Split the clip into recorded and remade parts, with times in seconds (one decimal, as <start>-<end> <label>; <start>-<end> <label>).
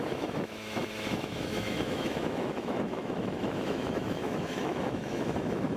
0.0-5.8 remade